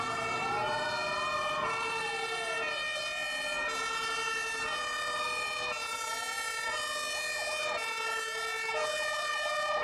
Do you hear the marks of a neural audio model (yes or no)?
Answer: no